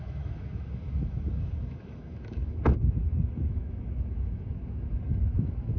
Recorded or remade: remade